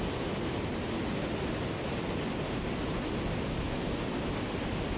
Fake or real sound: real